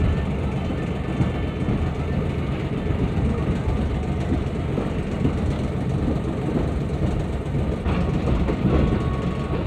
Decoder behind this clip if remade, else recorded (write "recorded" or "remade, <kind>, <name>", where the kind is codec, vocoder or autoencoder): recorded